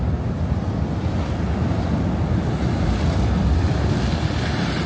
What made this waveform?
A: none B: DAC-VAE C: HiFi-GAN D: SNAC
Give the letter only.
A